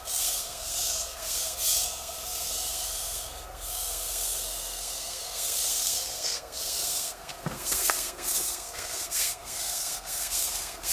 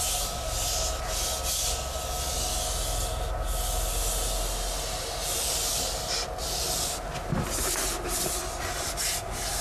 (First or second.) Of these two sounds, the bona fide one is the second